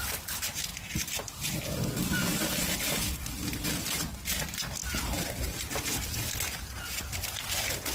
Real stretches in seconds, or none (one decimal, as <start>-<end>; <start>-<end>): 0.0-7.9

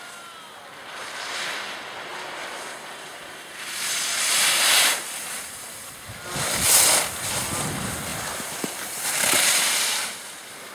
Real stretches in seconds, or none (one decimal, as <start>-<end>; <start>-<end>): 0.0-2.1; 5.9-8.1

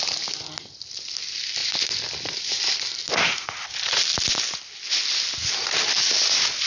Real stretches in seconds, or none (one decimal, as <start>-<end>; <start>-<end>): 0.0-1.6; 2.8-6.7

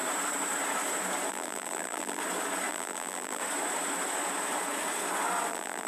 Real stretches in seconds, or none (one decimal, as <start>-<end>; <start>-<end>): 0.0-1.3; 2.2-2.7; 3.4-5.5

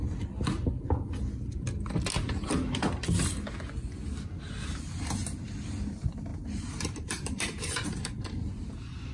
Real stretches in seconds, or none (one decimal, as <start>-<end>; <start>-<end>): 0.0-6.3; 8.5-9.1

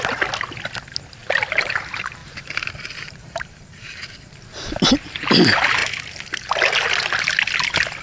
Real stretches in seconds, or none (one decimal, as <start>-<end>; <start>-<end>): 0.0-1.2; 1.7-2.2; 5.3-8.0

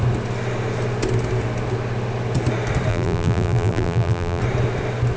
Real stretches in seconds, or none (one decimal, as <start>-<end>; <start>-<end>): 0.0-2.9; 4.4-5.2